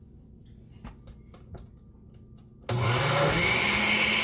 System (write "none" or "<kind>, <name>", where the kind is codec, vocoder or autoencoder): none